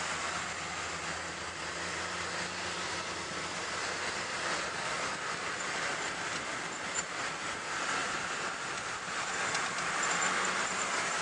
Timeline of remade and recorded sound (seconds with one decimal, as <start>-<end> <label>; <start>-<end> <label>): 0.0-3.8 remade; 3.8-5.9 recorded; 5.9-11.2 remade